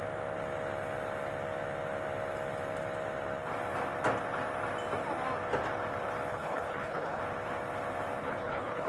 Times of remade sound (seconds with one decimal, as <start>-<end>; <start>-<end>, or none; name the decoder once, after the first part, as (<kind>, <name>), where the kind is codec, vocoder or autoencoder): 6.3-7.2 (codec, HILCodec); 8.2-8.9